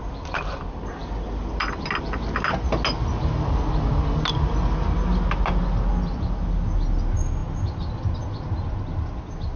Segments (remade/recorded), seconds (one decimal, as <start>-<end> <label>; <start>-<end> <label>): 0.0-9.6 recorded